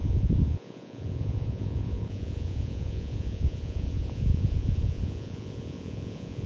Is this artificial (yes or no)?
yes